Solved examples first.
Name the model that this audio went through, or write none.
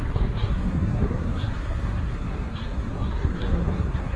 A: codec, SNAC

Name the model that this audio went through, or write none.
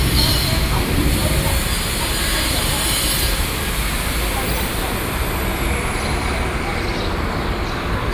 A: none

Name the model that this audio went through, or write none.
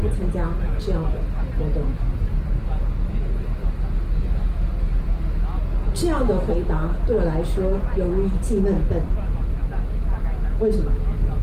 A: none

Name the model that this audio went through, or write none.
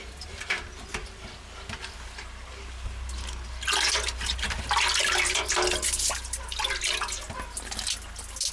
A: none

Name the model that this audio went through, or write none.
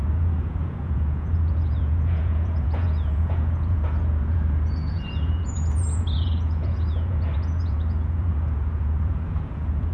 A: vocoder, Vocos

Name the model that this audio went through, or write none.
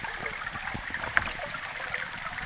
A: none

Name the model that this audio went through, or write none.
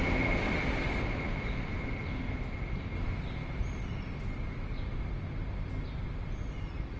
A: none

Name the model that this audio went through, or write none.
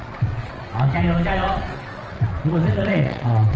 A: vocoder, WaveNeXt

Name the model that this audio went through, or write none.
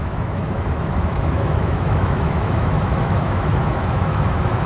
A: autoencoder, DAC-VAE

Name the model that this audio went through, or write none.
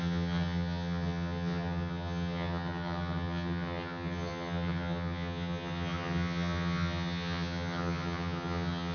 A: vocoder, HiFi-GAN